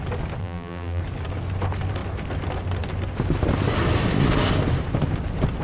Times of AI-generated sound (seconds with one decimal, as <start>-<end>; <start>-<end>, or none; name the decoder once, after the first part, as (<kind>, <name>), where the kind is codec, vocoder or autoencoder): 0.4-1.0 (vocoder, BigVGAN v2)